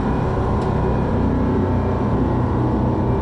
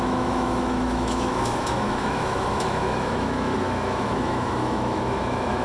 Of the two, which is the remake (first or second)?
second